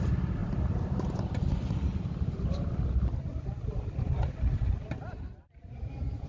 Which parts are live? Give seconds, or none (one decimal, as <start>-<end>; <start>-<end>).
0.0-0.4; 4.1-6.3